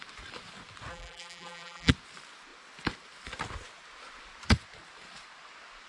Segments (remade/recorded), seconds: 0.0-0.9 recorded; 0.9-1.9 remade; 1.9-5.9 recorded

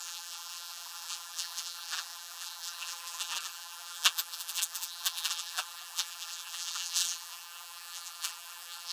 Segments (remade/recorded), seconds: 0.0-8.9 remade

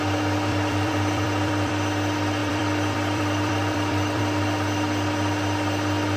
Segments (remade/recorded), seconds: 0.0-0.5 recorded; 0.5-1.7 remade; 1.7-2.4 recorded; 2.4-4.2 remade; 4.2-6.2 recorded

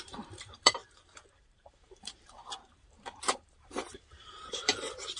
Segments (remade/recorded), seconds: 0.0-5.2 remade

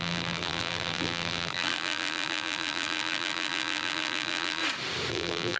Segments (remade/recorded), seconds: 0.0-4.6 remade; 4.6-5.1 recorded; 5.1-5.6 remade

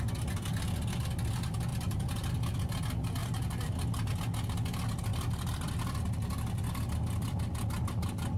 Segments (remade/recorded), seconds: 0.0-1.7 recorded; 1.7-2.3 remade; 2.3-3.2 recorded; 3.2-4.1 remade; 4.1-5.1 recorded; 5.1-5.7 remade; 5.7-8.4 recorded